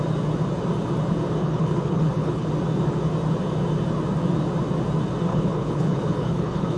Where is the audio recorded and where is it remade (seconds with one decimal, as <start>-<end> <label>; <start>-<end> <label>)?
0.0-1.4 recorded; 1.4-2.5 remade; 2.5-5.3 recorded; 5.3-6.8 remade